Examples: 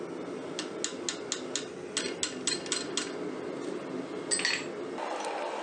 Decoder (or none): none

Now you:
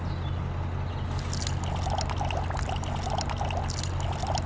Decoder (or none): none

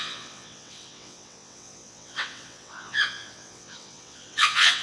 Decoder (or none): vocoder, WaveNeXt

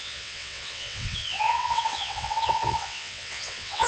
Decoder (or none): vocoder, WaveNeXt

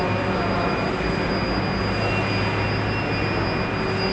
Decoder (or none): none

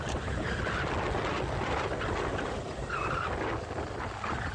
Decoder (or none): none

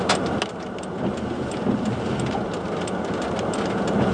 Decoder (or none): none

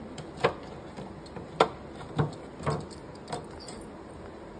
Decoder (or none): none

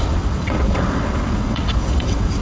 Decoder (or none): vocoder, WaveNeXt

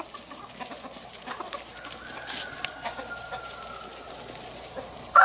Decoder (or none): none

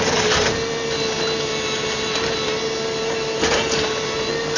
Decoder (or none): none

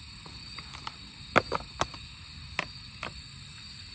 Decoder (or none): none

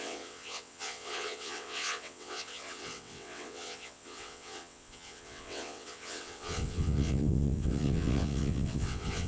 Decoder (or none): vocoder, WaveNeXt